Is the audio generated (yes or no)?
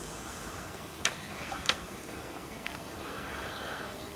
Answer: yes